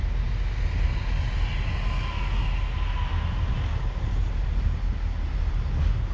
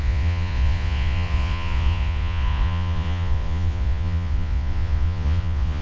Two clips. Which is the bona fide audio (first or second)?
first